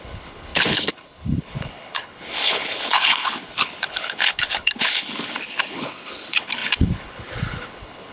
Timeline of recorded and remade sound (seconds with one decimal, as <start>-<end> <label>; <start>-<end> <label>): 0.0-8.1 remade